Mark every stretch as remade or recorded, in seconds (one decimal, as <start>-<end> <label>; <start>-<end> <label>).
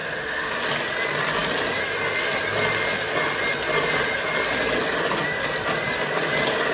0.0-0.5 remade; 0.5-6.7 recorded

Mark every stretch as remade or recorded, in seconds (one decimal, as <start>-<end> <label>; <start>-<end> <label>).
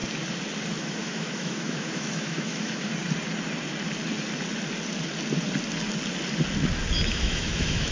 0.0-0.8 recorded; 0.8-2.9 remade; 2.9-7.1 recorded; 7.1-7.9 remade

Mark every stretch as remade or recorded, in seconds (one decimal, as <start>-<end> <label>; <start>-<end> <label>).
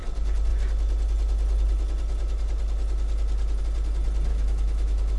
0.0-4.3 recorded; 4.3-5.2 remade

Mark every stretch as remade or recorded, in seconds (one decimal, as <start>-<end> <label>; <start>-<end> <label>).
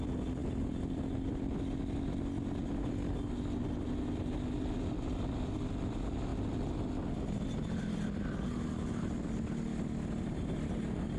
0.0-11.2 recorded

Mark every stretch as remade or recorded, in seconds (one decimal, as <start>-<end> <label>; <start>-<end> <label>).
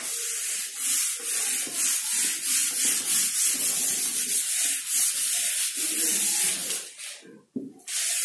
0.0-8.2 recorded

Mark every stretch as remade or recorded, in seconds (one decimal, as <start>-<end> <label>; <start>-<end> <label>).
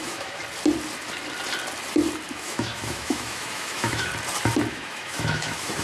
0.0-0.4 remade; 0.4-2.3 recorded; 2.3-4.1 remade; 4.1-4.7 recorded; 4.7-5.8 remade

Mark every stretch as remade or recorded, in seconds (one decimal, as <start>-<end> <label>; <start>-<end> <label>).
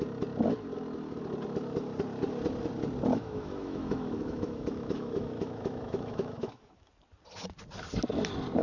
0.0-3.1 recorded; 3.1-6.9 remade; 6.9-8.6 recorded